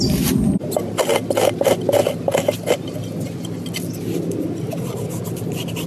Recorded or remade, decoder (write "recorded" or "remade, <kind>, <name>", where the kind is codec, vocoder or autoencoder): recorded